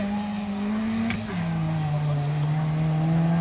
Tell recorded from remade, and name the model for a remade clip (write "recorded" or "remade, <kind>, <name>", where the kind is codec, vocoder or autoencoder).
recorded